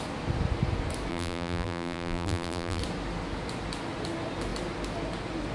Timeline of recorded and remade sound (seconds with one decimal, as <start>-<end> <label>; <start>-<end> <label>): 0.0-1.1 recorded; 1.1-2.8 remade; 2.8-5.5 recorded